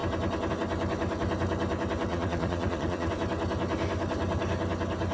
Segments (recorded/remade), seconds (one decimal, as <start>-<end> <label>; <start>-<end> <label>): 0.0-2.1 recorded; 2.1-3.1 remade; 3.1-5.1 recorded